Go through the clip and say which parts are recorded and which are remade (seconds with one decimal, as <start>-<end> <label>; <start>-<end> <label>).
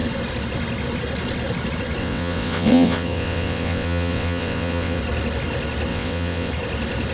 0.0-2.0 recorded; 2.0-5.0 remade; 5.0-5.9 recorded; 5.9-6.5 remade; 6.5-7.1 recorded